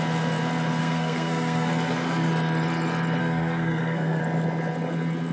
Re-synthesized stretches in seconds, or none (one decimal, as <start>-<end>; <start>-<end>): 0.8-2.3; 3.2-4.2